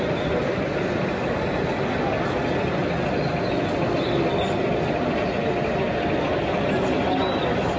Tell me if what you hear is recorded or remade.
recorded